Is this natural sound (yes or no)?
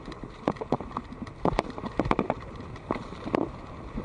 yes